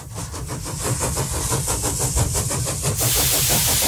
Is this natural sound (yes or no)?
no